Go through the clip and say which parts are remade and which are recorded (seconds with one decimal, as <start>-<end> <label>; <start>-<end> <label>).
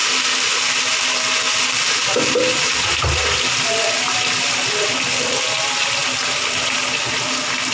0.0-0.7 recorded; 0.7-7.7 remade